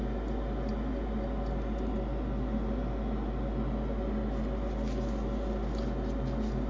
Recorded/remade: recorded